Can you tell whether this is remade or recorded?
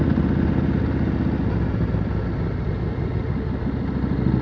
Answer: recorded